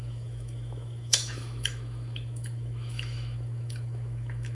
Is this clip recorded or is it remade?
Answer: remade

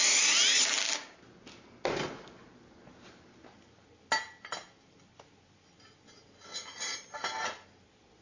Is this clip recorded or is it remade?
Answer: recorded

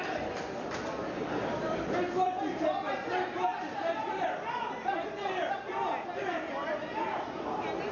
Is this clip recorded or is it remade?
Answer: remade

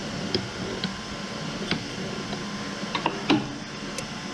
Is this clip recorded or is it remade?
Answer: recorded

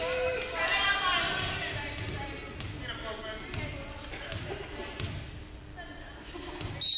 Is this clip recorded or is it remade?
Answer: recorded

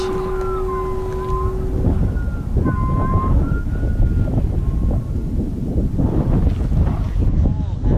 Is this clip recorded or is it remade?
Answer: recorded